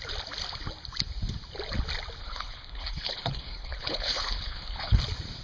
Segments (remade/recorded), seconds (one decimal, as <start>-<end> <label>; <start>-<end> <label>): 0.0-2.2 recorded; 2.2-5.0 remade; 5.0-5.4 recorded